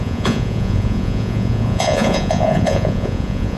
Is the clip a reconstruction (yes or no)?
yes